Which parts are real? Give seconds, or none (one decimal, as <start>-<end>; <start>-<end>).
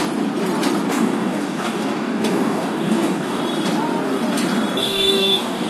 0.0-0.9; 3.4-4.8